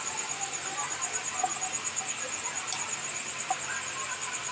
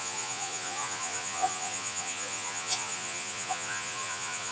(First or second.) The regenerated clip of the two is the second